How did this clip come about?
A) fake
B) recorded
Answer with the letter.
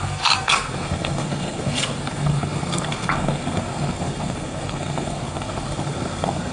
A